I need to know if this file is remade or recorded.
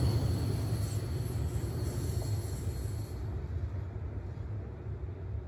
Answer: recorded